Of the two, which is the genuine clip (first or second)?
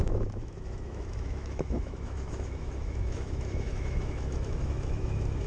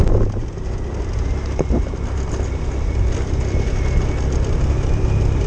second